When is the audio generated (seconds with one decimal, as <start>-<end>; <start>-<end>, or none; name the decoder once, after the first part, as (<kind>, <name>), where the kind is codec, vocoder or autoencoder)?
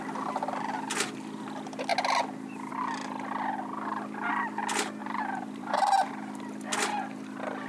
5.0-6.1 (vocoder, BigVGAN v2)